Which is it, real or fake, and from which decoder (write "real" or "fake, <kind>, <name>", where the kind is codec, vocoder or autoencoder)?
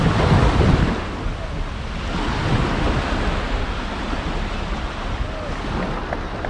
real